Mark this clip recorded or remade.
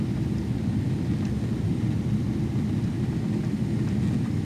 recorded